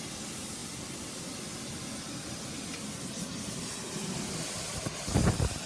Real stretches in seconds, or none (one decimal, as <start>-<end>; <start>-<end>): 0.0-5.7